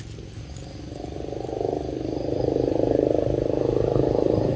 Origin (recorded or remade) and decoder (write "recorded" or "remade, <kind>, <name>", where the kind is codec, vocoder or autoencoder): recorded